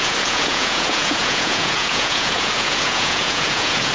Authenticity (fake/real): fake